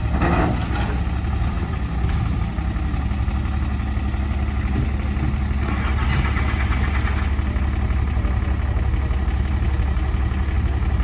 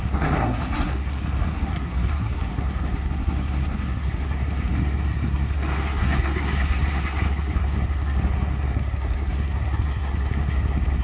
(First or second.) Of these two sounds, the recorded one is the first